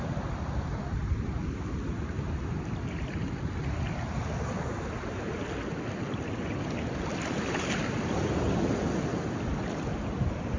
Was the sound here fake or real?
real